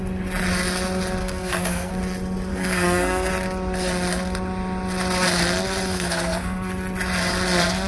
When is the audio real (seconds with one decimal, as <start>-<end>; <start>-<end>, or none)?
0.0-1.2; 1.9-2.5; 3.3-5.9; 6.7-7.9